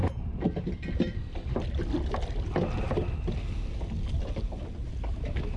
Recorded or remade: recorded